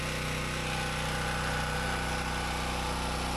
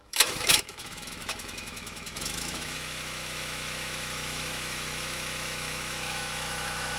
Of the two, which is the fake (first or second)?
second